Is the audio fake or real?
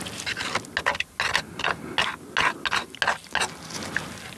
real